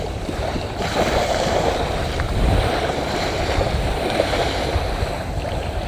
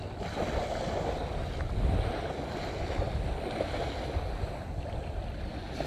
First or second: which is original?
second